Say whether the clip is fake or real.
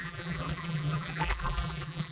fake